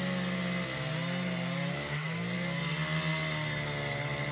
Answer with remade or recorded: recorded